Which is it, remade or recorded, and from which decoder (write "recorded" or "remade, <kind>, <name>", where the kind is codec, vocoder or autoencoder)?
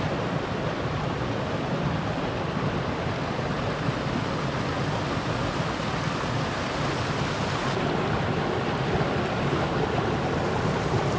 recorded